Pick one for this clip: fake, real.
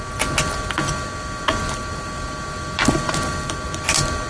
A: real